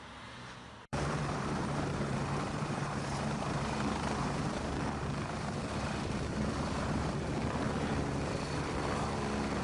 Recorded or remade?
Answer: remade